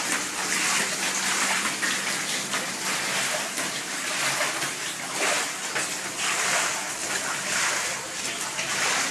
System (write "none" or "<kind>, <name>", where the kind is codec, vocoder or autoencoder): none